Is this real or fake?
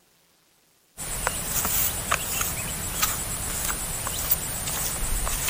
real